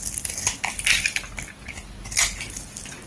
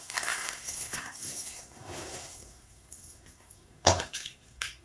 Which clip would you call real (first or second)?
first